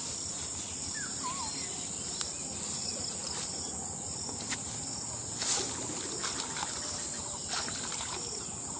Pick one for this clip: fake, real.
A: real